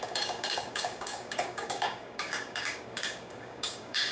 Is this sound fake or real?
fake